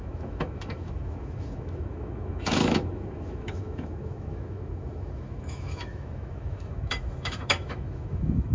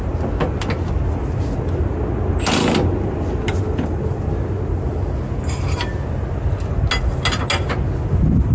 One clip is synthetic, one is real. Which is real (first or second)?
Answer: second